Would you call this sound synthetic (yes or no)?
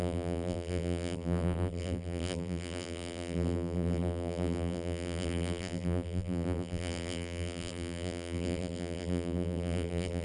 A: yes